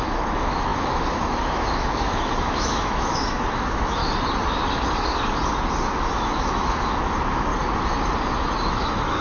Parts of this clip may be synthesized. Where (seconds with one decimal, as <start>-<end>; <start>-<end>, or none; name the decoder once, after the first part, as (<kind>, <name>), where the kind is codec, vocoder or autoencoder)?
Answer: 0.0-4.0 (autoencoder, DAC-VAE); 6.0-7.5; 8.7-9.2